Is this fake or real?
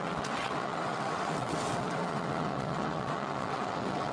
fake